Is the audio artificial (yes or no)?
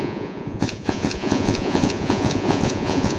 yes